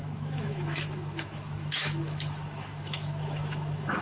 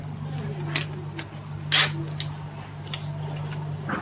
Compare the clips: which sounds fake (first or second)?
first